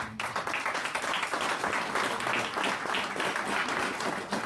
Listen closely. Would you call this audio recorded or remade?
recorded